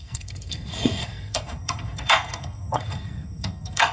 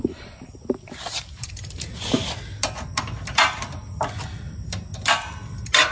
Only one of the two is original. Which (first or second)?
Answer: second